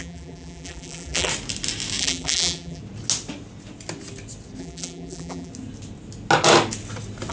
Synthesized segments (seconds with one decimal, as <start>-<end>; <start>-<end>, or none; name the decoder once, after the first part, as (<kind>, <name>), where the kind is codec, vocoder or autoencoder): 0.0-1.3 (vocoder, BigVGAN v2); 2.0-2.8; 4.6-5.5